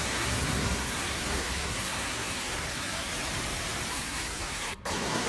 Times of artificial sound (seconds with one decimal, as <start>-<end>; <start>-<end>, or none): 0.0-3.1; 3.9-5.3